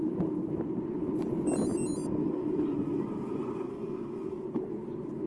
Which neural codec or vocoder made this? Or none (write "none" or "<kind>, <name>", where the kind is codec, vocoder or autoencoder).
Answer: none